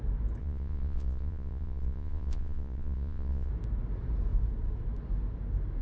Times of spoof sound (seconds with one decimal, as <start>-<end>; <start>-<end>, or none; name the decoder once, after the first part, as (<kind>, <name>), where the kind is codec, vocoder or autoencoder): 0.4-3.5 (vocoder, Vocos)